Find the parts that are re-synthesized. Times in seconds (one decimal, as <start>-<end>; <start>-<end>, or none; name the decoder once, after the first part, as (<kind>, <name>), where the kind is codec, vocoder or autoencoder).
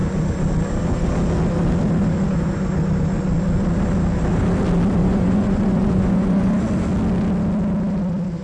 5.0-6.5 (vocoder, Vocos)